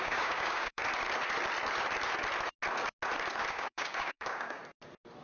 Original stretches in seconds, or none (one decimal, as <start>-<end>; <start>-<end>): 0.8-3.5; 4.6-5.2